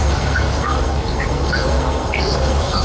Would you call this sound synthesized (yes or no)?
yes